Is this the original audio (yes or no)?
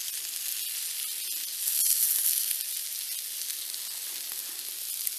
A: yes